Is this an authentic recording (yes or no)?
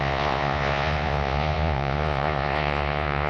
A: no